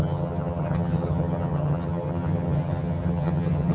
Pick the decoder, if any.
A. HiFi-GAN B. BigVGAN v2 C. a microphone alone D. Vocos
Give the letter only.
A